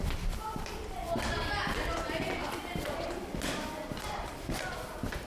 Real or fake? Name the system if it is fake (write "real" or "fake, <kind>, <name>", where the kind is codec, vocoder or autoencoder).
real